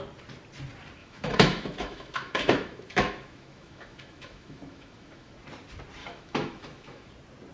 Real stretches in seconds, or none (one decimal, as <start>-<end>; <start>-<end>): 0.0-1.0; 5.3-6.0; 7.1-7.5